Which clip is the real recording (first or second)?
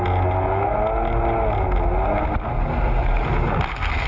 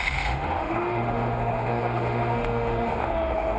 first